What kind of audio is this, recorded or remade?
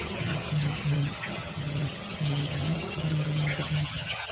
remade